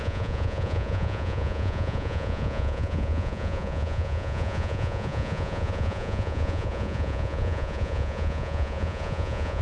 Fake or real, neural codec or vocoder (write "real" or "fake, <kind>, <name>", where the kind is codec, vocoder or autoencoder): fake, vocoder, Vocos